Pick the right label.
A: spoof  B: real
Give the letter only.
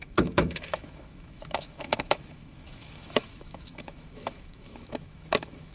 A